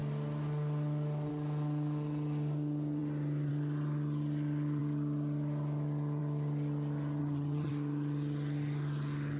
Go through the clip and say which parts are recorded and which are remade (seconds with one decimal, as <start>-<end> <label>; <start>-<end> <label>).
0.0-7.2 recorded; 7.2-7.7 remade; 7.7-9.4 recorded